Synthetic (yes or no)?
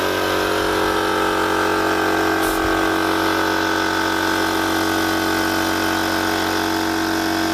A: no